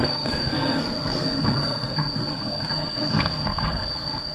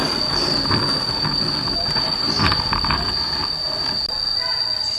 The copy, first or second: first